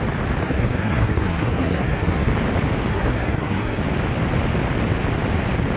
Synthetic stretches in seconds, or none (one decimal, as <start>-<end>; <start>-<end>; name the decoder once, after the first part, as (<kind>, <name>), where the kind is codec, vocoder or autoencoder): 0.4-2.3 (codec, SNAC); 2.9-3.8